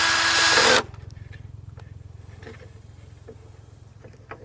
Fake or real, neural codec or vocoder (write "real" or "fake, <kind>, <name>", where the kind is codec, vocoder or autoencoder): real